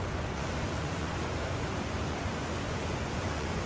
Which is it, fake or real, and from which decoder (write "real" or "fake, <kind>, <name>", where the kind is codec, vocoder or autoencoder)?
fake, vocoder, Vocos